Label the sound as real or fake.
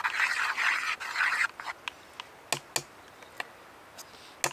real